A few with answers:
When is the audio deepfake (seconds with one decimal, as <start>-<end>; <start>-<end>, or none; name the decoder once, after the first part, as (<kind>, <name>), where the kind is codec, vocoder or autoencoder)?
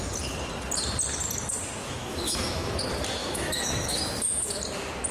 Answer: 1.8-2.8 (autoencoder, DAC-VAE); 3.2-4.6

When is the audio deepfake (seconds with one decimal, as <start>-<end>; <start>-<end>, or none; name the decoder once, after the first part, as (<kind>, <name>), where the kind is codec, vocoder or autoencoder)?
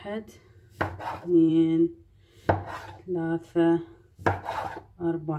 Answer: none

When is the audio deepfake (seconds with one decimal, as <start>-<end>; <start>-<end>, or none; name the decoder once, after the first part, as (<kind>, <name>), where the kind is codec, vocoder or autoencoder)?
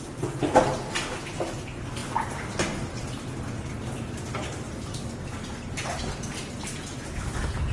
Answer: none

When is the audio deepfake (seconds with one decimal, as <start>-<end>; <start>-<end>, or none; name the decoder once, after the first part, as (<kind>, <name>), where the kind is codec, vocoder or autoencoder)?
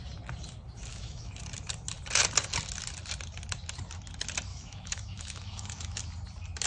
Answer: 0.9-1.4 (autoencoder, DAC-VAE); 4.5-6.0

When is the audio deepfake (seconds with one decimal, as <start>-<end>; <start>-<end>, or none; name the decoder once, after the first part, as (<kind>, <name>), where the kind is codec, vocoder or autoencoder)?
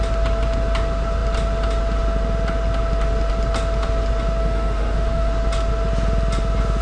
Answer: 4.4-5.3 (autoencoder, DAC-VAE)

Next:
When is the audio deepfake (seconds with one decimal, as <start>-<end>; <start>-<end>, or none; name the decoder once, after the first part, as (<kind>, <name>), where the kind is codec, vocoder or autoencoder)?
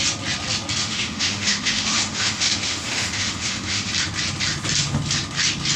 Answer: 0.8-3.9 (autoencoder, DAC-VAE)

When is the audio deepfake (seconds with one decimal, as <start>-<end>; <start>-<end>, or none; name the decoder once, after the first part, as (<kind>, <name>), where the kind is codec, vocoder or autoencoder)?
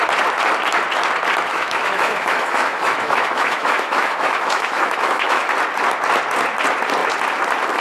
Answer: 1.5-5.5 (autoencoder, DAC-VAE)